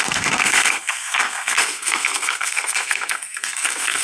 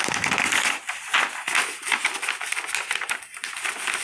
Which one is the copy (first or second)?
first